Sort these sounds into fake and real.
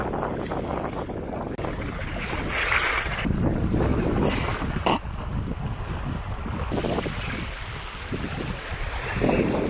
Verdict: real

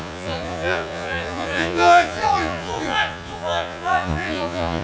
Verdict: fake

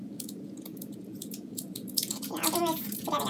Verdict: fake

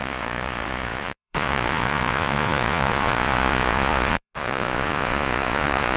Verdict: fake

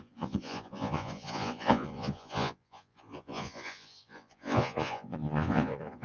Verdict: fake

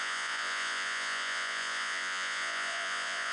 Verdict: fake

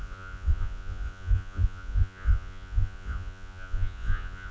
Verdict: fake